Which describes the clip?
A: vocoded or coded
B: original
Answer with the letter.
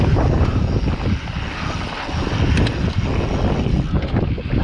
B